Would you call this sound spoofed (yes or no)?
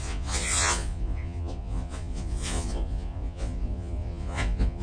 yes